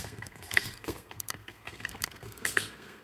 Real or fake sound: fake